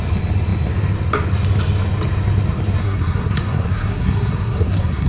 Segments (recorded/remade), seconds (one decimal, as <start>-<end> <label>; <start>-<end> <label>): 0.0-2.8 recorded; 2.8-5.1 remade